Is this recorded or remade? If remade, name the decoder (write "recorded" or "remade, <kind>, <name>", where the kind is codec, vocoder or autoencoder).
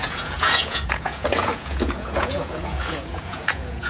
remade, vocoder, Vocos